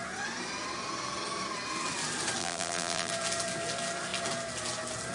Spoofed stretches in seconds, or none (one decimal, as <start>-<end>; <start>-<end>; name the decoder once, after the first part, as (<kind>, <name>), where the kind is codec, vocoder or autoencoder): 2.4-3.1 (vocoder, BigVGAN v2)